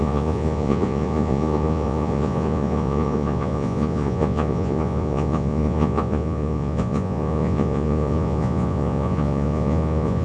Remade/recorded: remade